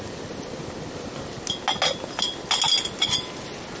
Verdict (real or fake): real